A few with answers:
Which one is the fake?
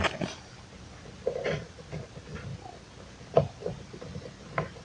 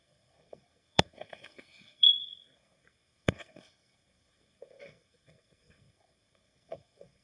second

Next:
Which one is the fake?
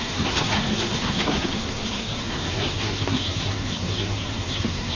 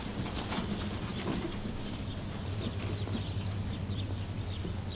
first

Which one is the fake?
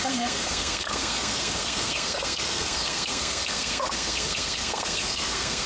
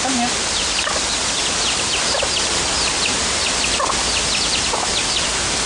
first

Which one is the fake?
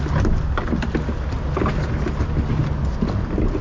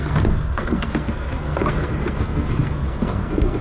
second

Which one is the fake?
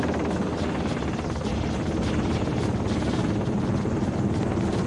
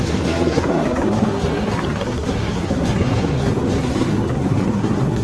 second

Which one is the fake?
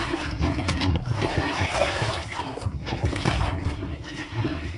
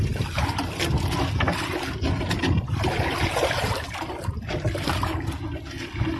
first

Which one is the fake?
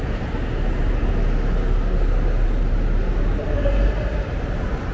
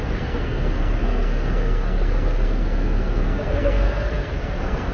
second